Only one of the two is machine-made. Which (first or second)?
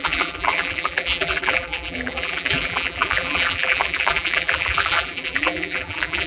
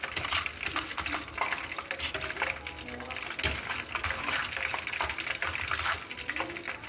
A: first